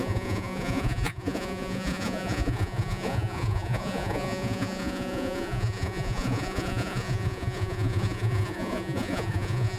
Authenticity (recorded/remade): remade